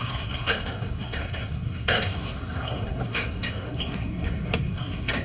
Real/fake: fake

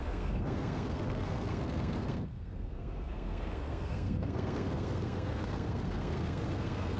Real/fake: fake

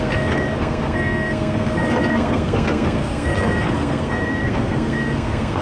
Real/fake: fake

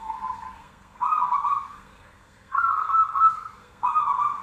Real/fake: fake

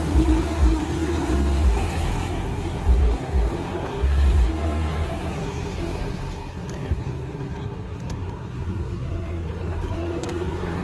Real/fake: fake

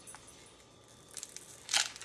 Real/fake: real